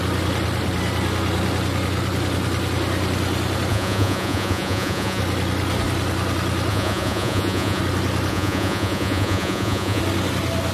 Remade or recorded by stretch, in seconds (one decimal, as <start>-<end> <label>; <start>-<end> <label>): 0.0-3.7 recorded; 3.7-5.2 remade; 5.2-6.7 recorded; 6.7-7.8 remade; 7.8-8.3 recorded; 8.3-10.0 remade; 10.0-10.7 recorded